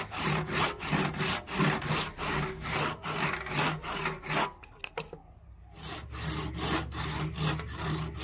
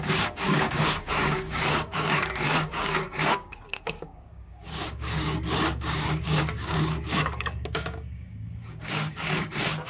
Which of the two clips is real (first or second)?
first